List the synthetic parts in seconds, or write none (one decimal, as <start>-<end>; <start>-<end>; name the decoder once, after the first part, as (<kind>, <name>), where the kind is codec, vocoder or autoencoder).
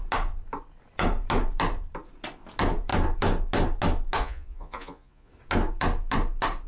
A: 4.2-5.3 (vocoder, Vocos)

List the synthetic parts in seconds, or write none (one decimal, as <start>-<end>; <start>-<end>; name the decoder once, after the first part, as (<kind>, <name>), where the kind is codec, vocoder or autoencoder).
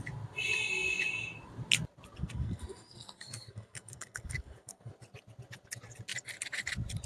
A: 2.2-4.9 (codec, SNAC)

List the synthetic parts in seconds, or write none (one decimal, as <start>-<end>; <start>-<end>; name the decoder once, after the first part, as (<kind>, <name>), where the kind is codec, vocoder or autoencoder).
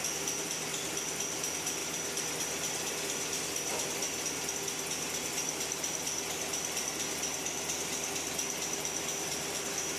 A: none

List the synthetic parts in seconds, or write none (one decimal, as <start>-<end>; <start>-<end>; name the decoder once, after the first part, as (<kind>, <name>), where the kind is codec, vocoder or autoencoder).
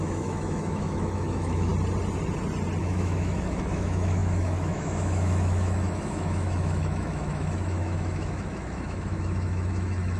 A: 0.0-1.7 (autoencoder, DAC-VAE); 2.8-10.2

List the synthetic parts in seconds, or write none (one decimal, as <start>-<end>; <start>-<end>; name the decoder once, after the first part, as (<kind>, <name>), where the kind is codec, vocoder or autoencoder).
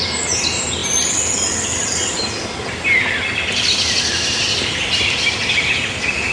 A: none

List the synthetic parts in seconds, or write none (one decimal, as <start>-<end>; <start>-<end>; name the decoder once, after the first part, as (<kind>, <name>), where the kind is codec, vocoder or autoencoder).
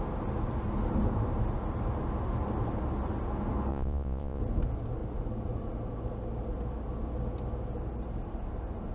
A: 3.7-4.4 (vocoder, Vocos)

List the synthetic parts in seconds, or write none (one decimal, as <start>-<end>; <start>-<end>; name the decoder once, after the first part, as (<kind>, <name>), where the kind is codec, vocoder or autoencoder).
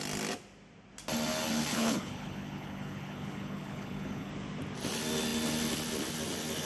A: 1.7-4.3 (codec, HILCodec)